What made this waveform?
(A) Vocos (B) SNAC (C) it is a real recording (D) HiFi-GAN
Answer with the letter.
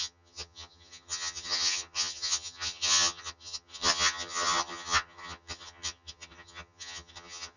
D